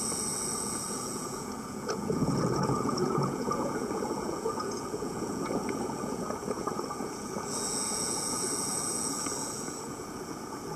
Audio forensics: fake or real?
fake